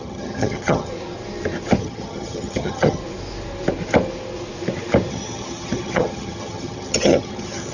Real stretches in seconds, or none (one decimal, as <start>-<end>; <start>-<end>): 0.9-1.8; 3.0-5.1